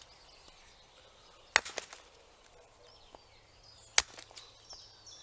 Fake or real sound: real